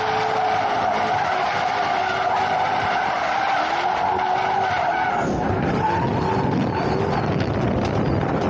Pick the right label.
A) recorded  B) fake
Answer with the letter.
A